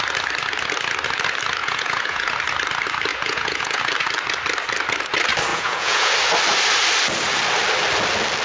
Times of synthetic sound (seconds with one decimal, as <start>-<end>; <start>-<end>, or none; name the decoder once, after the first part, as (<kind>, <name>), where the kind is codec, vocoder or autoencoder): 1.6-2.3 (vocoder, Vocos); 3.1-3.8; 5.5-6.1